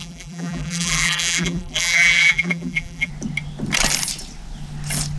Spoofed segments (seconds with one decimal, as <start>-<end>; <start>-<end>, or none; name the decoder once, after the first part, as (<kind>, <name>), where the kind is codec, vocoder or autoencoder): 0.0-3.1 (vocoder, BigVGAN v2)